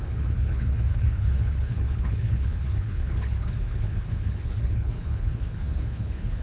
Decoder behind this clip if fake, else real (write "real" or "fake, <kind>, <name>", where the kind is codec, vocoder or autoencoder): fake, codec, HILCodec